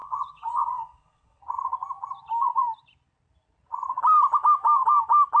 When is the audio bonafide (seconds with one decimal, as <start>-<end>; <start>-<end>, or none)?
1.4-5.4